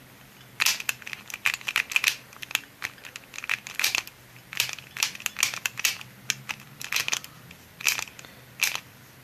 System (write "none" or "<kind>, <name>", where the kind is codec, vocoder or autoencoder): none